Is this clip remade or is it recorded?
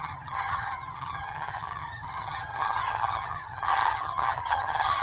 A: remade